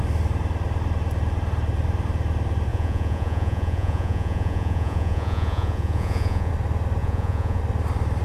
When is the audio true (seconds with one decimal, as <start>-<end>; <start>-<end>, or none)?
0.0-2.7; 6.5-7.0; 7.6-8.2